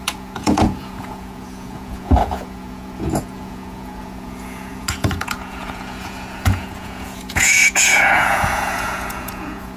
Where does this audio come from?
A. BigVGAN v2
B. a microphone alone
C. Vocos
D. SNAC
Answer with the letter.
C